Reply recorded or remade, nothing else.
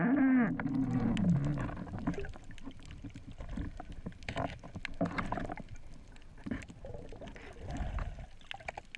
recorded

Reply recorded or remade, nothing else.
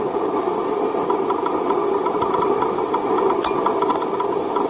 recorded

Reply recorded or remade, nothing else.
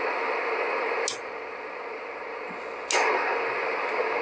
recorded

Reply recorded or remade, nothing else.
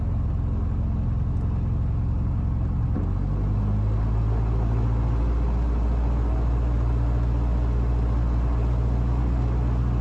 recorded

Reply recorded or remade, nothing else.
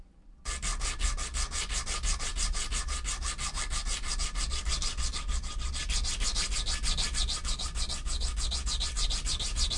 recorded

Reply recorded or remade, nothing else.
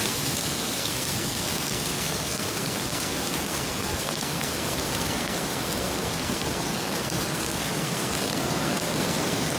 remade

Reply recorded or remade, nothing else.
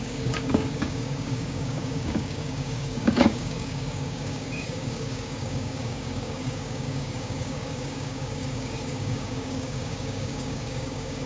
remade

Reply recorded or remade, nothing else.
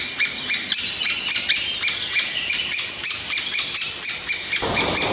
recorded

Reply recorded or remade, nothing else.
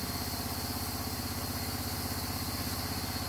recorded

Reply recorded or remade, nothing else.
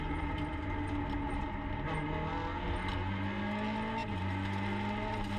recorded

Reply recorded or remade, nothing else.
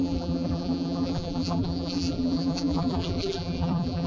remade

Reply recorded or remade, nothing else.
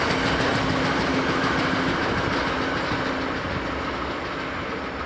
recorded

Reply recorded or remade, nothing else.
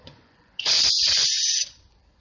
remade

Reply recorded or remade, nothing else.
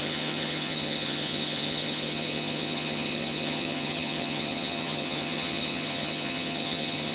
remade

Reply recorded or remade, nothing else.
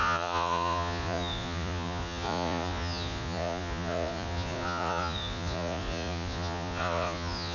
remade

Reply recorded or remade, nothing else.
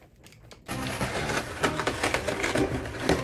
recorded